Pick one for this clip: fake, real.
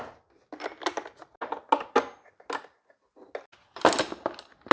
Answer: real